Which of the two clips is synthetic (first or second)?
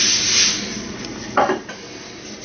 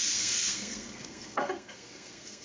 second